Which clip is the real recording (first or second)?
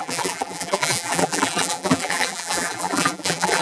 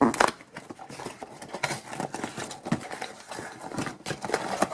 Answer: second